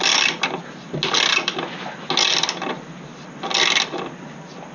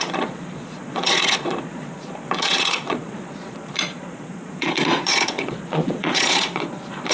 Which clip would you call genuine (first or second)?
first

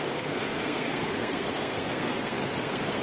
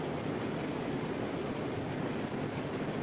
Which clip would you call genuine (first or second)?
second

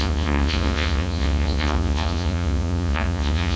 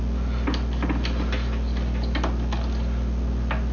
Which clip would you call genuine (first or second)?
second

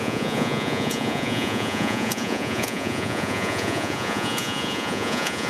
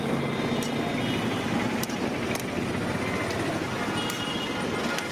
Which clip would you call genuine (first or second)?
second